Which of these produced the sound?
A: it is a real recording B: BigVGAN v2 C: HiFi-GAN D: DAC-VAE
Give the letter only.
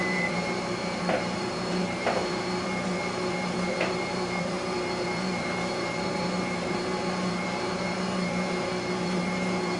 B